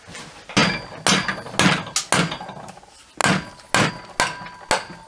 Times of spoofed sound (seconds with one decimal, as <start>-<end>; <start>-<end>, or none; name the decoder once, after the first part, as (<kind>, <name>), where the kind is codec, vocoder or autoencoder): none